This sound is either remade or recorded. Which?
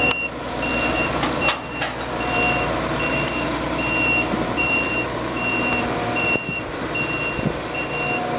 remade